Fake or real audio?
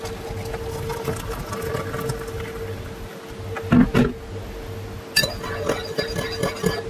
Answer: real